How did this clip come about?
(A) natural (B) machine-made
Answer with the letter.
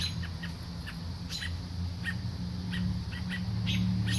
A